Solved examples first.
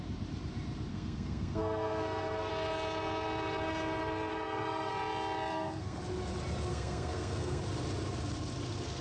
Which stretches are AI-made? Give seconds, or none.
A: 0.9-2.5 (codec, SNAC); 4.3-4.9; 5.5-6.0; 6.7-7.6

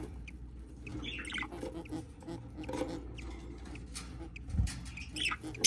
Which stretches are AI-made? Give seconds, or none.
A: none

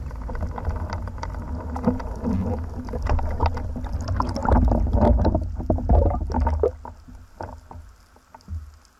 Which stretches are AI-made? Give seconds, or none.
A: none

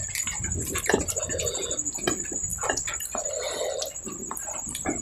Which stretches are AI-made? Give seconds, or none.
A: none